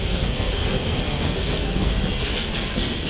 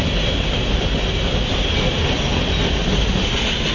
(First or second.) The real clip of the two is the second